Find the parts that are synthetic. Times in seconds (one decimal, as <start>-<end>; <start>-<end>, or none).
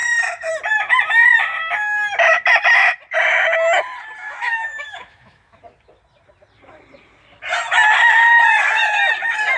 4.2-5.6